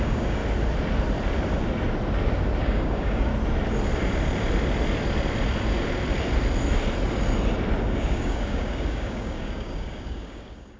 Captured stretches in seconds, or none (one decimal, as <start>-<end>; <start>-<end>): 0.4-2.6; 3.3-7.8